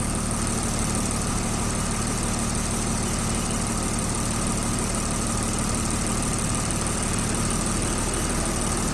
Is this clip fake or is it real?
real